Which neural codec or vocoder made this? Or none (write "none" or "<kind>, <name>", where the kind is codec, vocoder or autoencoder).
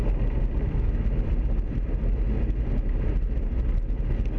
none